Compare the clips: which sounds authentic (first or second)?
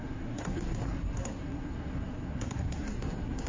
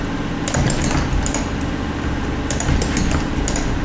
second